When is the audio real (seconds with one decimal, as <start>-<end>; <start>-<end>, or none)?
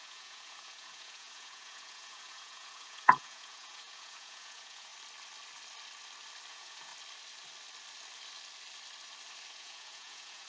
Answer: 4.9-6.5; 6.9-9.5